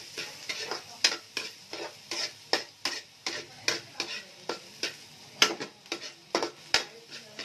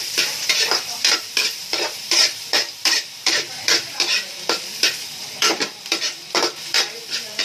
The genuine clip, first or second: first